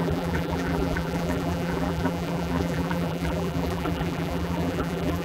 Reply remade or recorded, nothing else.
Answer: remade